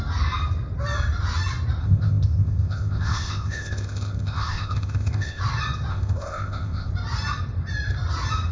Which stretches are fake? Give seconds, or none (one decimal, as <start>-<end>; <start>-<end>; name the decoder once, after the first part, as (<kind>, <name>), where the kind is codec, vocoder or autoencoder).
1.8-5.4 (codec, ZipCodec); 5.9-6.9